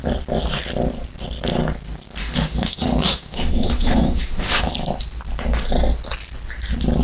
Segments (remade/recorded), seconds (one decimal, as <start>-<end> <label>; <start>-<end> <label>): 0.0-2.2 recorded; 2.2-4.7 remade; 4.7-7.0 recorded